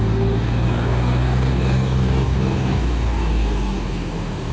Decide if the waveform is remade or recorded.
remade